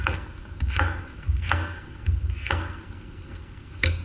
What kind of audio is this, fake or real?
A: fake